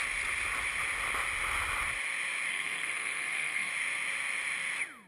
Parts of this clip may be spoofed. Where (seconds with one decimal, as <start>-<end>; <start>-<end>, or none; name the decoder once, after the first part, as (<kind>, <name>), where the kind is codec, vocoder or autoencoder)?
2.5-3.7 (codec, SNAC)